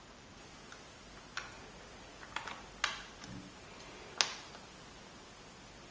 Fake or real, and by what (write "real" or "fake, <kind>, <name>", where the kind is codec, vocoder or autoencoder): real